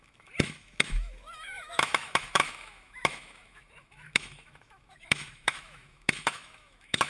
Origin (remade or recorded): remade